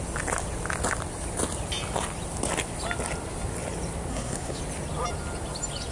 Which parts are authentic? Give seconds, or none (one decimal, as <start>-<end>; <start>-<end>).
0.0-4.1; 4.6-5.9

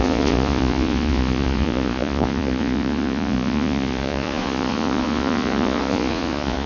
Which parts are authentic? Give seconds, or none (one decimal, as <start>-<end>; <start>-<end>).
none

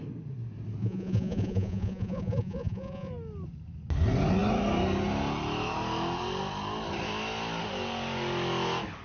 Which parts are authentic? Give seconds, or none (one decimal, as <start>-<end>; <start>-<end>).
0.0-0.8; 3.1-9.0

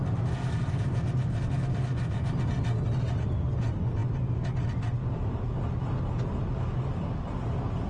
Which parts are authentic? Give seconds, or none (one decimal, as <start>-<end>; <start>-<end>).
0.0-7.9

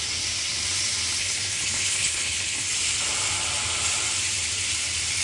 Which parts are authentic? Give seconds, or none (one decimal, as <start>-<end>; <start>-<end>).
0.0-1.2; 2.7-5.2

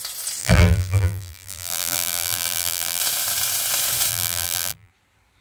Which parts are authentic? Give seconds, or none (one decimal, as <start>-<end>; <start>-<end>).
0.0-0.4; 3.0-4.1; 4.9-5.4

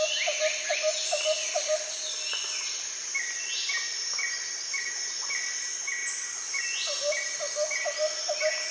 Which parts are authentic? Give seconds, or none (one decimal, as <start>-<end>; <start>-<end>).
0.0-8.7